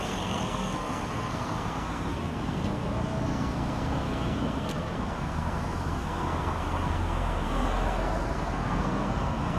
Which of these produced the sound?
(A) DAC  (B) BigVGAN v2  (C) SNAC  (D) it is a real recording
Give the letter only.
C